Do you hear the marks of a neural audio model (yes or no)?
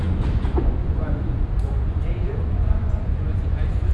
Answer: yes